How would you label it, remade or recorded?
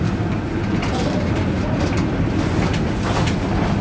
recorded